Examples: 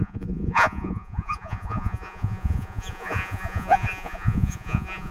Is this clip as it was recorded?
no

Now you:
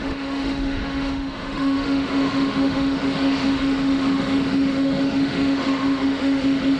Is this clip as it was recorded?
no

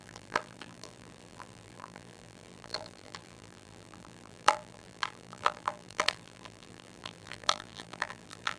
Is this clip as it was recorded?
no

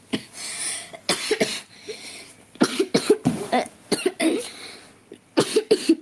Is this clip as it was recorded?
no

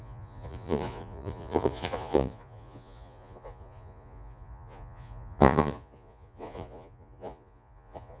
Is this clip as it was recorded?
no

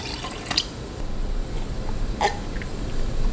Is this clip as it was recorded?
no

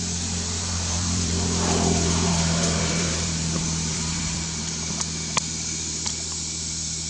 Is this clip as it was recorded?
no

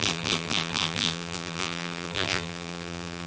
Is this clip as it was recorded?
no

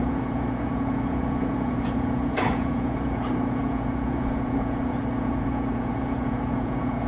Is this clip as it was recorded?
no